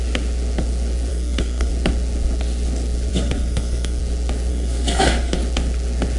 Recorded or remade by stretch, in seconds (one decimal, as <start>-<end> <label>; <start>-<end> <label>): 0.0-1.1 recorded; 1.1-1.7 remade; 1.7-3.1 recorded; 3.1-4.0 remade; 4.0-4.5 recorded; 4.5-5.4 remade; 5.4-6.2 recorded